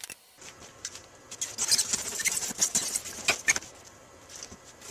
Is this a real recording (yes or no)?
yes